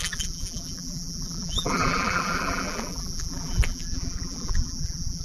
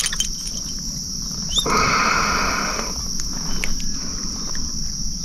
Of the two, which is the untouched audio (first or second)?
second